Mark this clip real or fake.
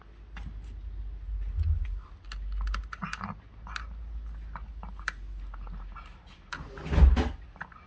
real